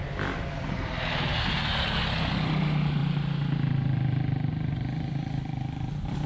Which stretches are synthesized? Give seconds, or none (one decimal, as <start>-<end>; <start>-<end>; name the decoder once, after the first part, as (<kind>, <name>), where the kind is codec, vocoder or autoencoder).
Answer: none